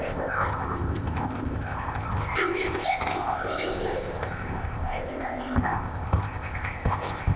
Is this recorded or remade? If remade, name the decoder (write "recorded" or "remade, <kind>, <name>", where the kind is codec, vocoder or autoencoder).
remade, codec, ZipCodec